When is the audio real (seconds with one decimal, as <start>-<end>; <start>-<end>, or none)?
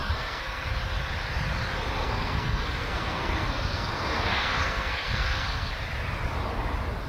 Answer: 0.7-2.0; 5.7-7.1